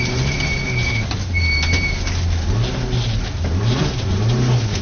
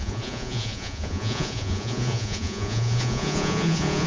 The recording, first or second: first